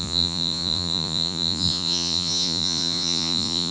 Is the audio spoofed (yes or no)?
yes